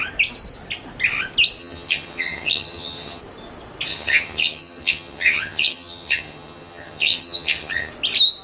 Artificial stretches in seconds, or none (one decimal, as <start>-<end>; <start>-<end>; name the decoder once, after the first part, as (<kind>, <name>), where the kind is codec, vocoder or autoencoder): 1.6-3.2 (vocoder, HiFi-GAN); 3.9-7.9